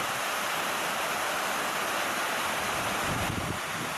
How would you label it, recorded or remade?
recorded